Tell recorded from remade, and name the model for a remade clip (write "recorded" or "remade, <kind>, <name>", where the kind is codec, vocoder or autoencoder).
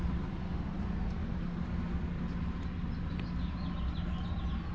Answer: recorded